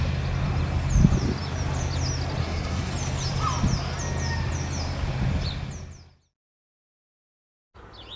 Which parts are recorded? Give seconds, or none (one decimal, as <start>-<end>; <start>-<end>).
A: 0.0-2.4; 2.9-8.2